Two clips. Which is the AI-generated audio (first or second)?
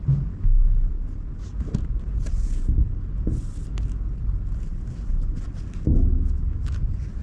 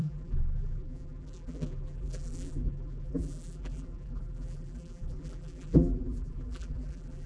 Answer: second